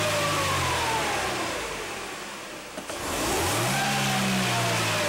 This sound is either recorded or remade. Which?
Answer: recorded